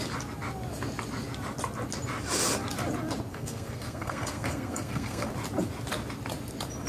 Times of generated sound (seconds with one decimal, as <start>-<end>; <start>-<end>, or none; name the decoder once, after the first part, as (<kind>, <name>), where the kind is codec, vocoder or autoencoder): 3.3-5.3 (codec, SNAC)